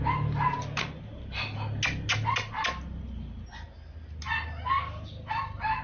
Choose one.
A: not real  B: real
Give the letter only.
B